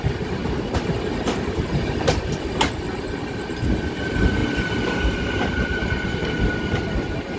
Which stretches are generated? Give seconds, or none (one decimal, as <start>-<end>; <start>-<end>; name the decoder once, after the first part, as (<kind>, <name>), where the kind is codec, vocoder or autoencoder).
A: none

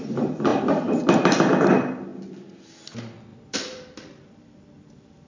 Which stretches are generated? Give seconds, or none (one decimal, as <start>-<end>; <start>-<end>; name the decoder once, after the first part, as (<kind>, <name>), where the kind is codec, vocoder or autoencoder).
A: 0.5-1.7 (vocoder, BigVGAN v2); 3.3-5.3